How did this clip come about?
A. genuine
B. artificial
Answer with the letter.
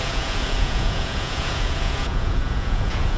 B